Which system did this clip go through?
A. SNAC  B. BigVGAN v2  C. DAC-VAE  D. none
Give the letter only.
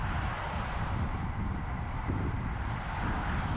B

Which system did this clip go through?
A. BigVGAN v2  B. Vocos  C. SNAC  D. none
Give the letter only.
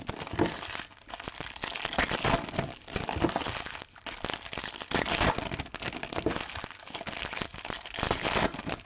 D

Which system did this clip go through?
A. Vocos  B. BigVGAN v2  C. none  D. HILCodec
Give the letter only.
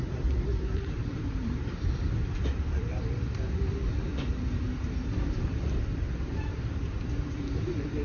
B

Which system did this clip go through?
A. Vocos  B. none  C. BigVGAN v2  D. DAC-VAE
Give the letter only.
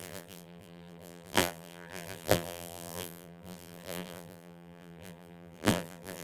C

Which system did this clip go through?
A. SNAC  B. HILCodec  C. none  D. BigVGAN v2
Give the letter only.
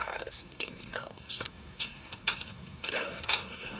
A